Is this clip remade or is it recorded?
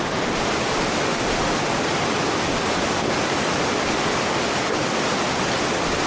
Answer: recorded